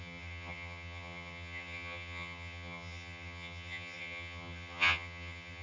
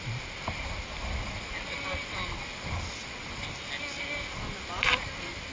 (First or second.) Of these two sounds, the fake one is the first